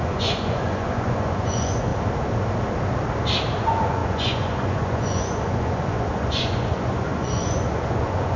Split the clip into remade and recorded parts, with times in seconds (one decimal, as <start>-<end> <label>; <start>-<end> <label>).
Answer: 0.0-1.9 remade; 1.9-3.6 recorded; 3.6-8.4 remade